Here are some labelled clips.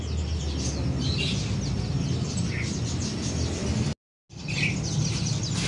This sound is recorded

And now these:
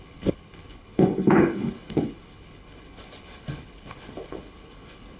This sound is remade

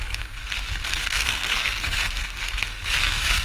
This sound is remade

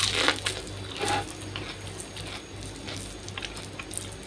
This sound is recorded